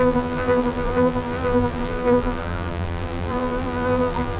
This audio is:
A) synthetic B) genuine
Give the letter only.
A